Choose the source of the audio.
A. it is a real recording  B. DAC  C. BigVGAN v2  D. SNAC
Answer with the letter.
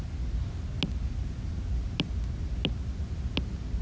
A